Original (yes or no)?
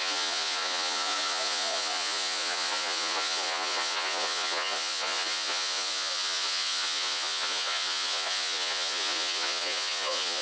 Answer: no